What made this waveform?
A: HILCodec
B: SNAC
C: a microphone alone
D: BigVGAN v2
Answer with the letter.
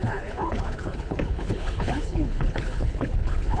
A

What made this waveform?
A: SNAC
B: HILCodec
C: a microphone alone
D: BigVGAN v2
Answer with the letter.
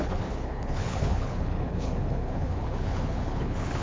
B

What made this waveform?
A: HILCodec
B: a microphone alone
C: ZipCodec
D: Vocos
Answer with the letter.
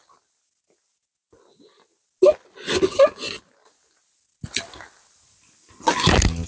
B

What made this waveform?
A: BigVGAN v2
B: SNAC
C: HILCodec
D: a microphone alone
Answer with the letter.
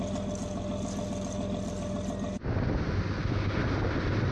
D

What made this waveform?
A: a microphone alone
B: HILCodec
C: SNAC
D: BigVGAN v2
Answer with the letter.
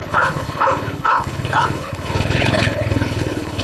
B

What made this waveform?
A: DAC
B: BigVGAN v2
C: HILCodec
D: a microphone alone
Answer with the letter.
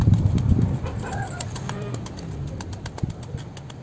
D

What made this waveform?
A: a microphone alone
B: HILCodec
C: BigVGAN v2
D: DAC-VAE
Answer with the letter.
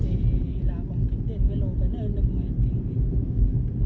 A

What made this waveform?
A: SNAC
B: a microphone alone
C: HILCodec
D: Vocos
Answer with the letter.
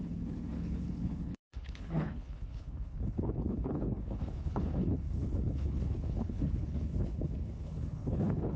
C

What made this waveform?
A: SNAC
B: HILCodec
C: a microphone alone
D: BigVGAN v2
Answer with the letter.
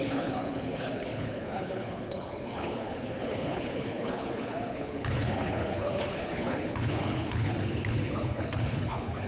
B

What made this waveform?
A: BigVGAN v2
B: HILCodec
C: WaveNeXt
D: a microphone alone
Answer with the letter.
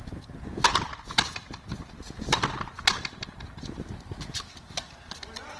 D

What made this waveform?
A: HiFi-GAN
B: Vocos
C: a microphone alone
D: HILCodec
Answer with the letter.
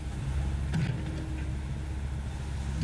C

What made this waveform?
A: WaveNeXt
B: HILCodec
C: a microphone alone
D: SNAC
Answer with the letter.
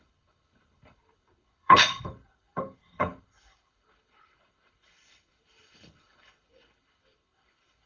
B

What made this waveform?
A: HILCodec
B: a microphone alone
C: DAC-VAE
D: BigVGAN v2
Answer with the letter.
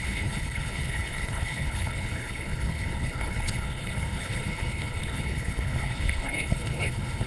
A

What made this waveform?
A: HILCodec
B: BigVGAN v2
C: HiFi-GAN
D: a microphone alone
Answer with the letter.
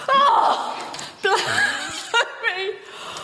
D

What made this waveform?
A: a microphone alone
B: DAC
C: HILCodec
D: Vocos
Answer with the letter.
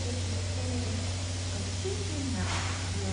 A